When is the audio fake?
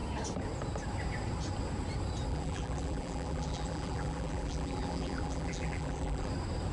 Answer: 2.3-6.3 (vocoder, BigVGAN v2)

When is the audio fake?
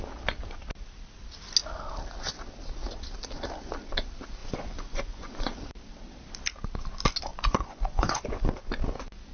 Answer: 4.4-5.6 (vocoder, Vocos); 7.3-8.6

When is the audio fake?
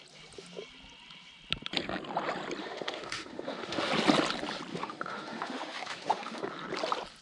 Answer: 2.6-3.9 (autoencoder, DAC-VAE); 4.7-6.5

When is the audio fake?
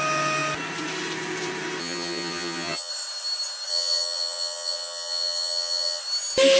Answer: 1.8-2.9 (vocoder, HiFi-GAN); 3.7-6.0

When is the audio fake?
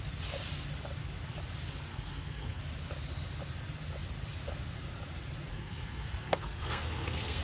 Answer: 1.9-2.6 (codec, SNAC); 5.5-7.4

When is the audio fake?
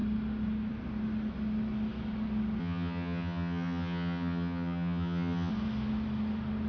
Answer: 2.6-5.5 (vocoder, HiFi-GAN)